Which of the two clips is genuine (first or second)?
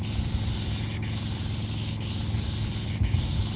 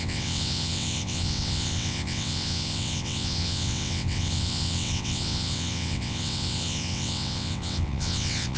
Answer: first